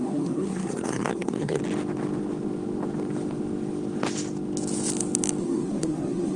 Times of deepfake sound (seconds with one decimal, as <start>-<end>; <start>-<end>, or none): 0.0-1.6; 5.4-6.4